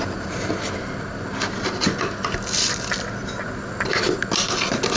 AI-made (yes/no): no